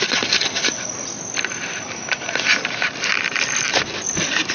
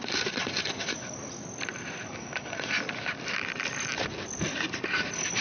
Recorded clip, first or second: second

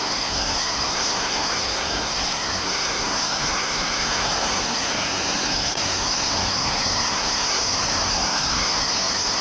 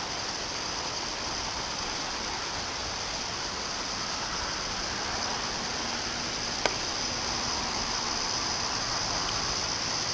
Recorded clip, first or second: second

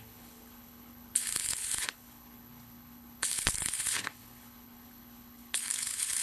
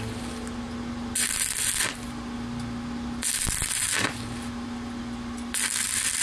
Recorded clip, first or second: second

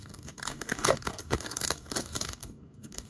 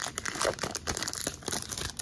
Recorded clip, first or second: second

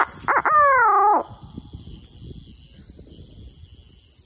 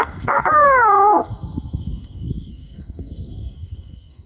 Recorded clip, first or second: first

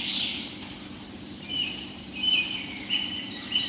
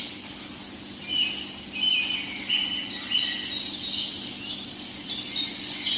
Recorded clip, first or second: second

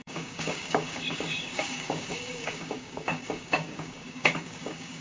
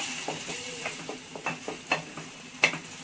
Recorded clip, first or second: second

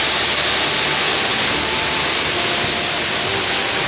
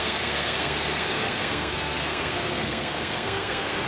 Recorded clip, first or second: first